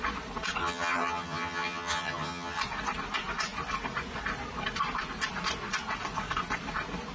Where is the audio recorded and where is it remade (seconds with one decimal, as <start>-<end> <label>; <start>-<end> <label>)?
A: 0.0-0.6 recorded; 0.6-2.6 remade; 2.6-7.1 recorded

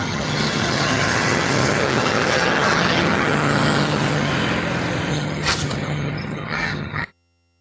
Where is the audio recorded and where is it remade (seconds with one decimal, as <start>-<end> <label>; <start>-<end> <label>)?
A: 0.0-4.3 remade; 4.3-5.1 recorded; 5.1-7.6 remade

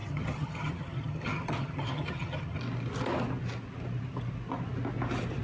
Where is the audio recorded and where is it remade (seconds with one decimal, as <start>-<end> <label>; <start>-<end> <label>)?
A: 0.0-2.6 remade; 2.6-5.4 recorded

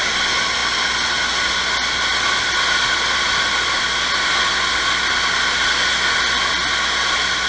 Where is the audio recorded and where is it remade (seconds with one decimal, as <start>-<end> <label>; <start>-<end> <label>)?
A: 0.0-7.5 recorded

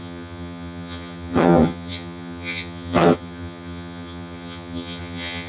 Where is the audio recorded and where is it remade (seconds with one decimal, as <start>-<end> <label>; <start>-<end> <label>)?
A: 0.0-5.5 remade

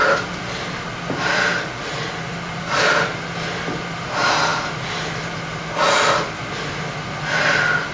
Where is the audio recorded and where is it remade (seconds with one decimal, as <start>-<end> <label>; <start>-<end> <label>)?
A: 0.0-7.9 recorded

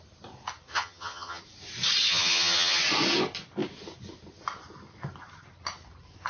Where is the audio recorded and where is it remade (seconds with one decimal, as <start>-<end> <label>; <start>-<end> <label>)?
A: 0.0-0.7 recorded; 0.7-1.4 remade; 1.4-2.0 recorded; 2.0-2.8 remade; 2.8-6.3 recorded